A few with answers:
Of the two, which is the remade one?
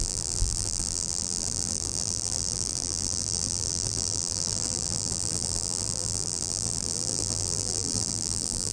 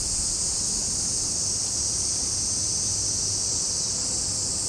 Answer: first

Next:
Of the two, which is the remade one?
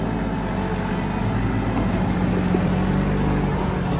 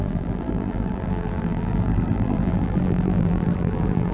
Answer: second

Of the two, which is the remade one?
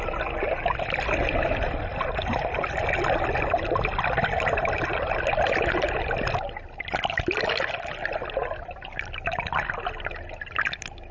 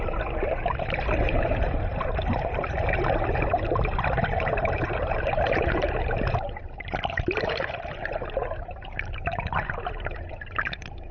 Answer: second